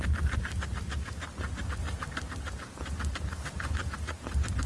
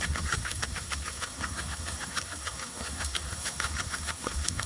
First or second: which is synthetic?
second